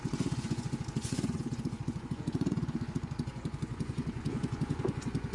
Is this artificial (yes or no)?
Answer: yes